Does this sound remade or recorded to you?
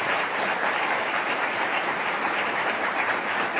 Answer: remade